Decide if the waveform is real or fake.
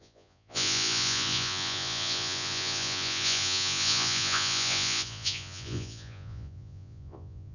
fake